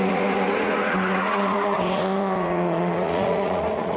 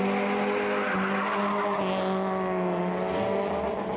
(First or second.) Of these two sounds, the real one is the second